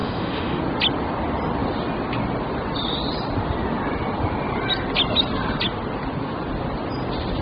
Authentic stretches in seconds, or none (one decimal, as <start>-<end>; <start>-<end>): 0.6-7.4